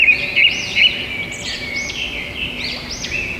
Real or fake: real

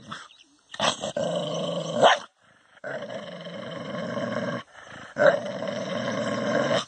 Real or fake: fake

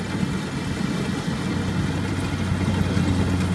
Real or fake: real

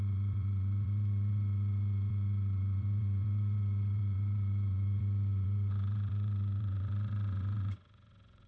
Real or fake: fake